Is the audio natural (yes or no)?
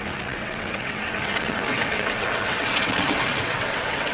no